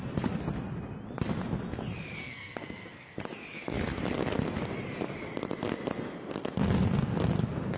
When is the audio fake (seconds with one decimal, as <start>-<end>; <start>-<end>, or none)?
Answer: 2.2-3.2